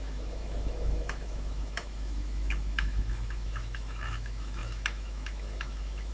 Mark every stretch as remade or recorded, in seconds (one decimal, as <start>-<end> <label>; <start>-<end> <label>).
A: 0.0-6.1 remade